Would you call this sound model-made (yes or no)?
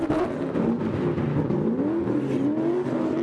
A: no